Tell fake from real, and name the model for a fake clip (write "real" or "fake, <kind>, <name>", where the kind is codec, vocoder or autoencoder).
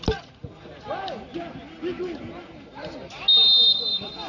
real